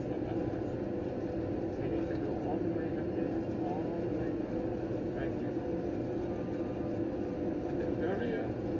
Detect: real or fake real